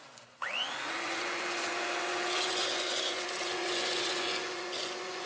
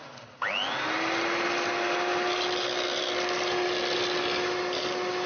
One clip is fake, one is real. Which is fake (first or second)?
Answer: first